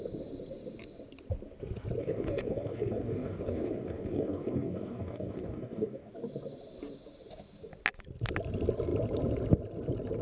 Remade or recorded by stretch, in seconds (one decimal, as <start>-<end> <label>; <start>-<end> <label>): 0.0-2.0 recorded; 2.0-6.1 remade; 6.1-10.2 recorded

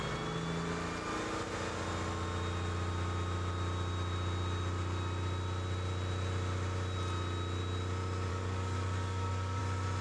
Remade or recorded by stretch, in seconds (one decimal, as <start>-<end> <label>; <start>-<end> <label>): 0.0-8.3 recorded; 8.3-9.6 remade; 9.6-10.0 recorded

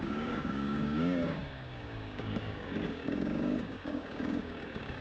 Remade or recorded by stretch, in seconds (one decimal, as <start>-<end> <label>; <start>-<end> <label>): 0.0-5.0 remade

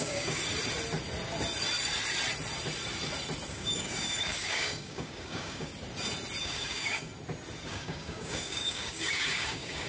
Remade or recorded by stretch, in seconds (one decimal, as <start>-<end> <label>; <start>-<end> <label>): 0.0-0.4 remade; 0.4-3.5 recorded; 3.5-5.7 remade; 5.7-6.4 recorded; 6.4-7.1 remade; 7.1-7.7 recorded; 7.7-9.9 remade

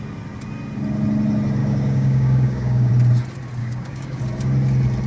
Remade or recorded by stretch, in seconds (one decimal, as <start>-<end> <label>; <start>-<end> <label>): 0.0-1.6 recorded; 1.6-2.9 remade; 2.9-3.6 recorded; 3.6-4.2 remade; 4.2-5.1 recorded

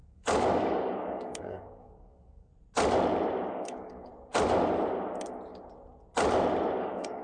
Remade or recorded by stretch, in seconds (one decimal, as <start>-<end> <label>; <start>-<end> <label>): 0.0-2.5 remade; 2.5-3.5 recorded; 3.5-4.1 remade; 4.1-6.8 recorded; 6.8-7.2 remade